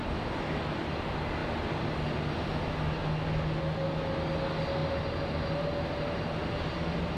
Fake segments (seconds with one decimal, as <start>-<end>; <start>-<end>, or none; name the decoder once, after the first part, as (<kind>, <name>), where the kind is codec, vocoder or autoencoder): none

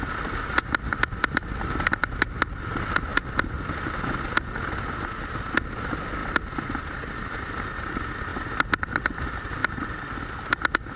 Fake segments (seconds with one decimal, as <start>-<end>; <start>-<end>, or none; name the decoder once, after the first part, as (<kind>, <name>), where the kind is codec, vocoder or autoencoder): 6.2-7.6 (vocoder, BigVGAN v2)

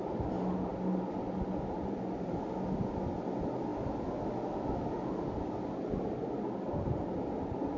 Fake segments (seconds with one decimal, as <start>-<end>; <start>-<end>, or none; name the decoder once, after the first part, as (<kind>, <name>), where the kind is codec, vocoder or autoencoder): none

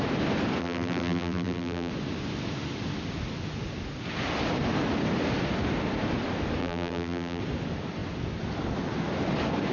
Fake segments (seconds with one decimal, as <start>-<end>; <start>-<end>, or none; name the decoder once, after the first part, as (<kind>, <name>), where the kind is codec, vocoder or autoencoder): 0.6-1.9 (vocoder, BigVGAN v2); 6.6-7.4

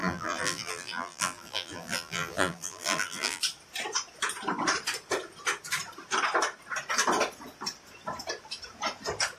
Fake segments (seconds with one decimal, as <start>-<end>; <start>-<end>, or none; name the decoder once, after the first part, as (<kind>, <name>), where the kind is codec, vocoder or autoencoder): 0.0-3.4 (vocoder, BigVGAN v2)